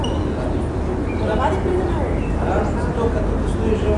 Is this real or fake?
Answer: real